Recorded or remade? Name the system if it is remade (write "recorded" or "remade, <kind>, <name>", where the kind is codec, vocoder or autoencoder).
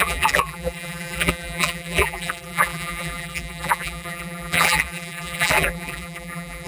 remade, vocoder, BigVGAN v2